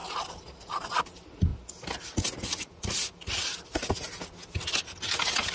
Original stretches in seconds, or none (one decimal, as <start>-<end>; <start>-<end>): 0.0-5.5

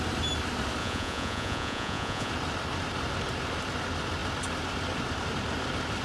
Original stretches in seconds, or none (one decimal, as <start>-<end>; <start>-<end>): 0.0-0.8; 2.3-6.0

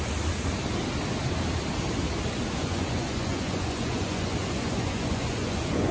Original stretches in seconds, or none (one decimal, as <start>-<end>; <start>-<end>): 0.0-2.6

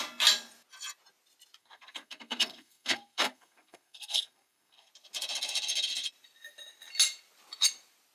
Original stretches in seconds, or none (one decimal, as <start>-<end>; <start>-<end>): 0.0-1.6; 4.9-8.1

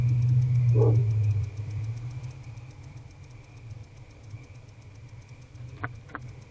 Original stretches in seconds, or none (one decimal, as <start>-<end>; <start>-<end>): 0.0-1.0; 4.5-6.5

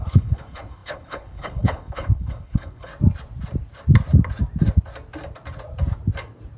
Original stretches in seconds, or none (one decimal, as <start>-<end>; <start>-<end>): 2.9-6.6